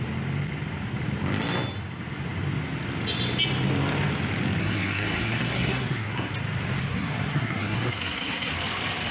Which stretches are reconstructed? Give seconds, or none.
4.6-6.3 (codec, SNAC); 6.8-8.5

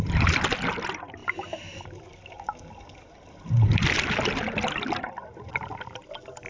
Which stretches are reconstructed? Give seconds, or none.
none

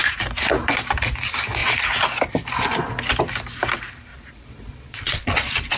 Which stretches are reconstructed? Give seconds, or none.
4.1-5.8 (vocoder, Vocos)

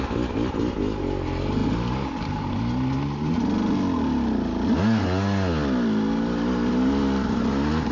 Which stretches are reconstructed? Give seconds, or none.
none

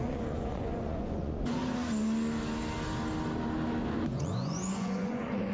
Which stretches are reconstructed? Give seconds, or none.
0.0-1.6 (vocoder, Vocos); 3.9-5.5

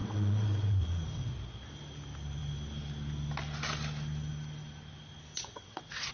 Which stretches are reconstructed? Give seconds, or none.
0.0-1.3 (vocoder, WaveNeXt); 5.3-6.1

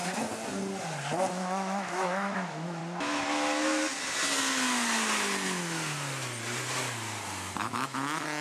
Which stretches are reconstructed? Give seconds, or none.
1.3-2.8 (autoencoder, DAC-VAE); 7.6-8.4